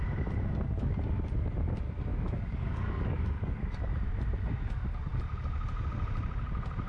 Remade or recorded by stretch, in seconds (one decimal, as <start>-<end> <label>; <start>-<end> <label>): 0.0-2.1 recorded; 2.1-3.9 remade; 3.9-6.9 recorded